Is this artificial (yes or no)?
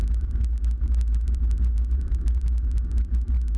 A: no